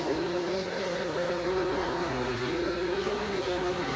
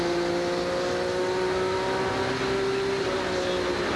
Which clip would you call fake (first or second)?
first